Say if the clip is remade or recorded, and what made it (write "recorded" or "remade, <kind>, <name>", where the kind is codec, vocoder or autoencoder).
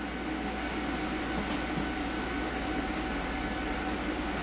recorded